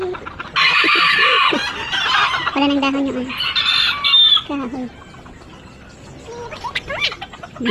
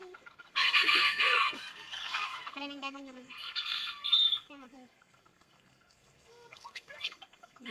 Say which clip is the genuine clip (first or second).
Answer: first